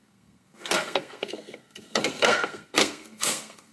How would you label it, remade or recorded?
remade